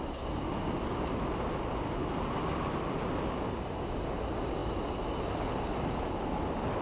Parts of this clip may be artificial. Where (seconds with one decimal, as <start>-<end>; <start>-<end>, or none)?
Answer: none